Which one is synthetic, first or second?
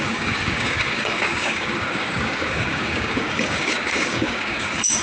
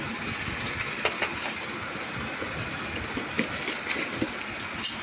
first